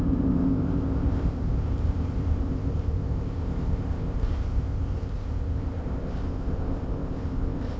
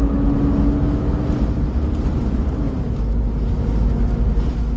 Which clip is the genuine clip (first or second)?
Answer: second